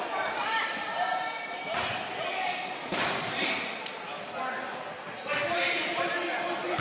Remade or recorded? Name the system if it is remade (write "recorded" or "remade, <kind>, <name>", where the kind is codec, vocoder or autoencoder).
recorded